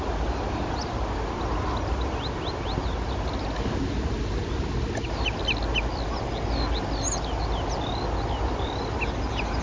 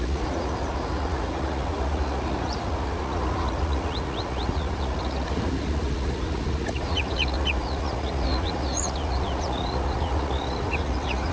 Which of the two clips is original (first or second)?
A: first